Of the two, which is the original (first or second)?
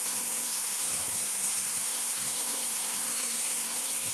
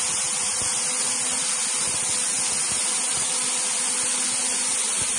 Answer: second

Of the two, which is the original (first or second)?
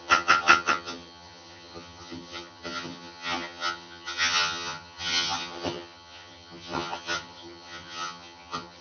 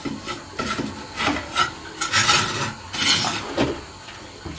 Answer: second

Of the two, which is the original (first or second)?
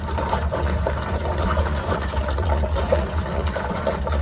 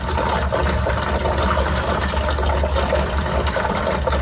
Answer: second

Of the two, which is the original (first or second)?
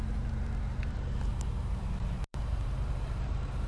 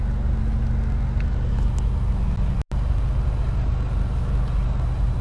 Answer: second